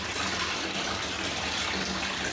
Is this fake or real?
real